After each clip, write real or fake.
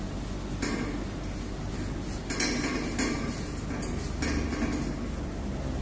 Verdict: real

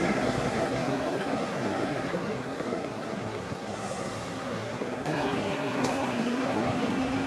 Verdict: fake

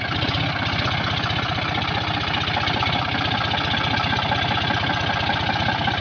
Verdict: real